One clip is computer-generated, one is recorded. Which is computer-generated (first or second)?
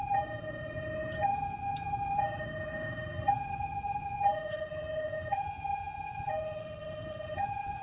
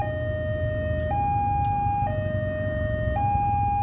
first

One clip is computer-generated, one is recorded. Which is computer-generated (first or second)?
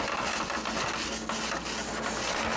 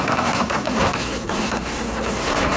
second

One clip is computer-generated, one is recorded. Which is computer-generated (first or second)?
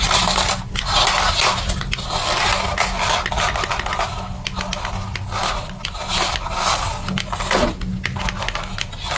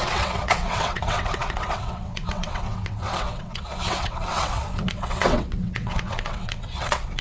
second